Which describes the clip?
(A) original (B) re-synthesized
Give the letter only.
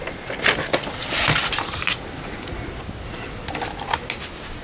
A